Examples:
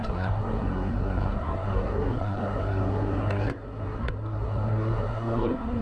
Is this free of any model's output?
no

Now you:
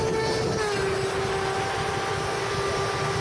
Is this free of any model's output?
yes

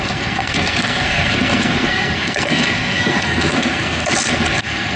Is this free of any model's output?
no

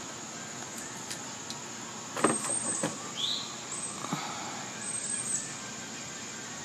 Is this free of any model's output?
yes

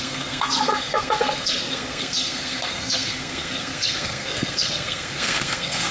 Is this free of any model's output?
no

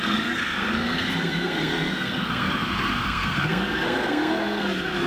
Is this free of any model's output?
no